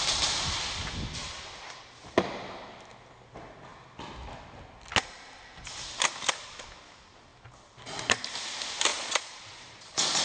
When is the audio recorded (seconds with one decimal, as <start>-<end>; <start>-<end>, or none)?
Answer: 0.0-8.9